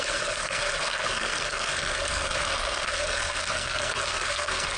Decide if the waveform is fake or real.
fake